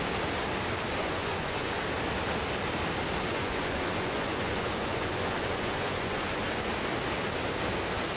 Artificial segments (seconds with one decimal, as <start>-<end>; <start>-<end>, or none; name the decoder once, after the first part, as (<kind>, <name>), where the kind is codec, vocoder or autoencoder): 1.0-1.8 (vocoder, Vocos); 3.3-6.7